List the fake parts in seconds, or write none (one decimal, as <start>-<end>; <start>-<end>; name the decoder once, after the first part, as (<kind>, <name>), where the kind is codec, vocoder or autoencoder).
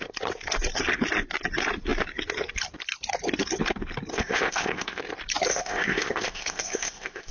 4.1-5.0 (codec, ZipCodec); 5.5-7.3